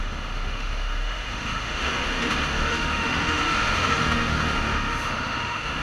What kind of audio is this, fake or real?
fake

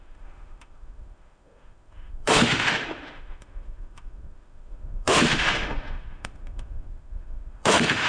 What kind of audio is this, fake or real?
fake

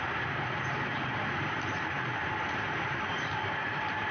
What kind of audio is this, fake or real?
fake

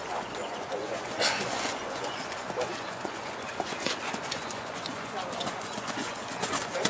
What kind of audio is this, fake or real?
fake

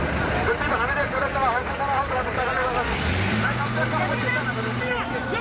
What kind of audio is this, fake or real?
fake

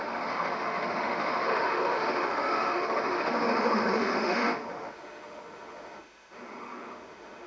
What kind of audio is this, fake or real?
fake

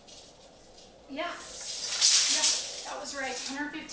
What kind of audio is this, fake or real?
real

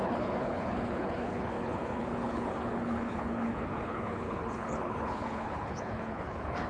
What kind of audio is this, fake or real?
fake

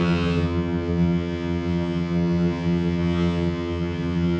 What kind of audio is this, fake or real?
fake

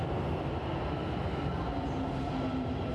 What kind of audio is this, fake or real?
real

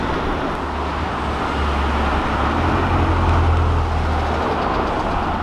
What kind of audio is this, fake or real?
real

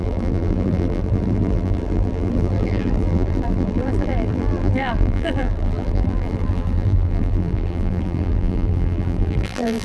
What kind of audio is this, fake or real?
fake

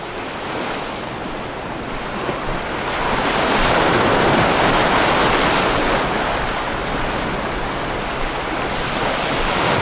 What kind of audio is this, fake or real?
real